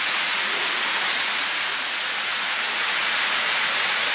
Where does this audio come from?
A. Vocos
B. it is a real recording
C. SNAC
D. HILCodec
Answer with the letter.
A